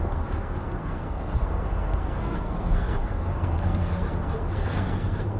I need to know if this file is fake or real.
fake